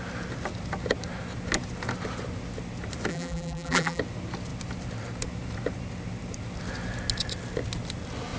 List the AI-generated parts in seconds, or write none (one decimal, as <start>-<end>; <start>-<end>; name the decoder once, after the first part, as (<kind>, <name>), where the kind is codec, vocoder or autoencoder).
3.1-4.0 (vocoder, BigVGAN v2)